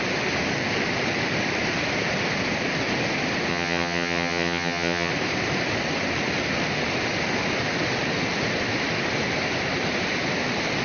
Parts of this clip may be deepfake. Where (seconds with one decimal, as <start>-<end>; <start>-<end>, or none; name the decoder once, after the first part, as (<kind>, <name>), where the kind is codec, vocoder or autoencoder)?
3.5-5.1 (vocoder, HiFi-GAN)